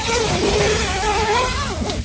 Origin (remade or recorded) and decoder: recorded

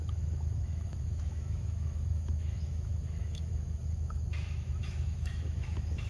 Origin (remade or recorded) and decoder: remade, autoencoder, DAC-VAE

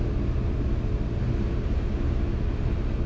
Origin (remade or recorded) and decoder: recorded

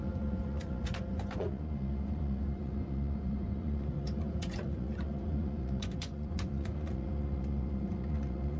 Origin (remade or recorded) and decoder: remade, vocoder, Vocos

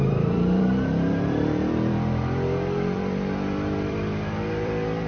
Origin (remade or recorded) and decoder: remade, vocoder, BigVGAN v2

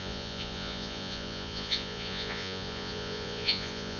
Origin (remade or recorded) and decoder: remade, vocoder, Vocos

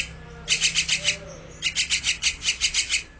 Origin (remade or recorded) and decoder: recorded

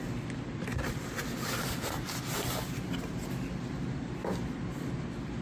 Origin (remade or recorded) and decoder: remade, vocoder, BigVGAN v2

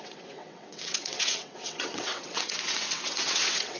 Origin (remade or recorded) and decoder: remade, vocoder, WaveNeXt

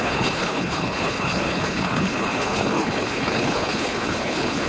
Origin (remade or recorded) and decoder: remade, codec, HILCodec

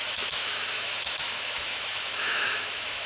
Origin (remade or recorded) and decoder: remade, autoencoder, DAC-VAE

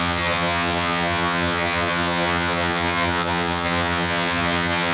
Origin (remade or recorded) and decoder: remade, vocoder, HiFi-GAN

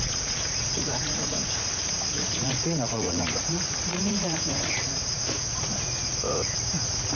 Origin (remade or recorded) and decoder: remade, vocoder, Vocos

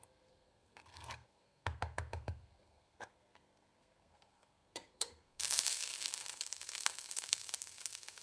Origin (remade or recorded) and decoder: remade, codec, SNAC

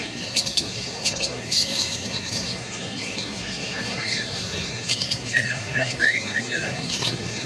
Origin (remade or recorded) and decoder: remade, codec, SNAC